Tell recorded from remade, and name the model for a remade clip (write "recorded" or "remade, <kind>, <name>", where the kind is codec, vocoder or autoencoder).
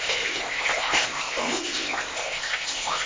remade, codec, ZipCodec